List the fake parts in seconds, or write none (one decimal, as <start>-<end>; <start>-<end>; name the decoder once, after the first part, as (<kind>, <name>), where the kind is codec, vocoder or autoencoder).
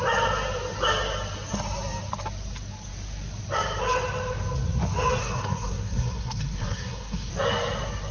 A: 5.2-7.3 (codec, SNAC)